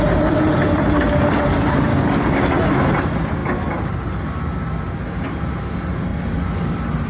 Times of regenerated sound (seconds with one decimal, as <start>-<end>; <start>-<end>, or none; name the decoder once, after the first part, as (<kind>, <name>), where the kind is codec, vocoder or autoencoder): 1.9-2.4 (codec, DAC)